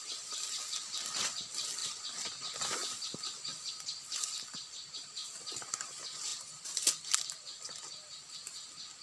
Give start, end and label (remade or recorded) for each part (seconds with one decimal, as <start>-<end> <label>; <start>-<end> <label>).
0.0-1.8 recorded; 1.8-2.6 remade; 2.6-9.0 recorded